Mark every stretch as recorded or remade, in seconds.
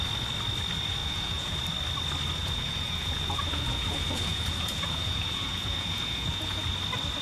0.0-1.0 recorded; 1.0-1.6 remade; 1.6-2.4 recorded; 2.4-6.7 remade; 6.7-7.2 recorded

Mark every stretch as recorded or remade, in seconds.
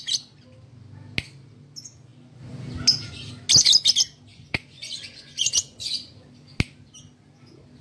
0.0-4.3 recorded; 4.3-6.1 remade; 6.1-7.8 recorded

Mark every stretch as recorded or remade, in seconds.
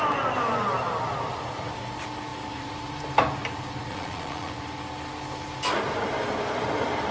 0.0-3.9 recorded; 3.9-4.5 remade; 4.5-7.1 recorded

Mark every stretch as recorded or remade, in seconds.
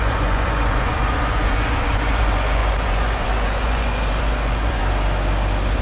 0.0-4.8 remade; 4.8-5.8 recorded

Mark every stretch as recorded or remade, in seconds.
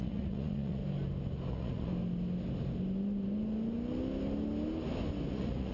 0.0-0.8 remade; 0.8-1.5 recorded; 1.5-1.9 remade; 1.9-5.3 recorded; 5.3-5.7 remade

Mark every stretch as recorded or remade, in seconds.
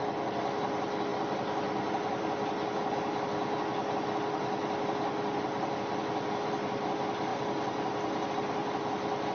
0.0-9.3 recorded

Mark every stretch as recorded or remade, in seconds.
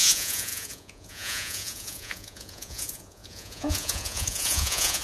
0.0-5.0 remade